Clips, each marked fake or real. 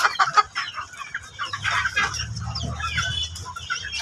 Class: real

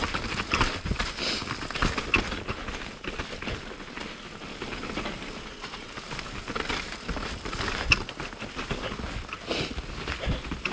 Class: real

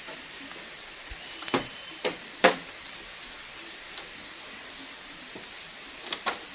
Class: real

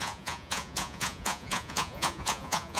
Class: fake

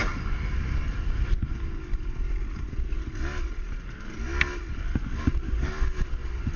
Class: real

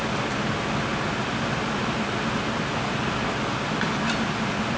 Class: real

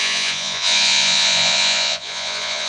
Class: fake